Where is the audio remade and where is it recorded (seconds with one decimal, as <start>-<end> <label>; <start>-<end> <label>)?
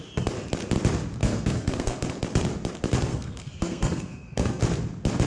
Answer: 0.0-1.2 recorded; 1.2-2.1 remade; 2.1-3.1 recorded; 3.1-4.6 remade; 4.6-5.3 recorded